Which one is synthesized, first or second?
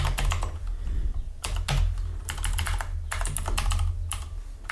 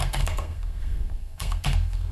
second